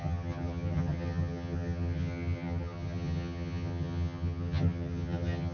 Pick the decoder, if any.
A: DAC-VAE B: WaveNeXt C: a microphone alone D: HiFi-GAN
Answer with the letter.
D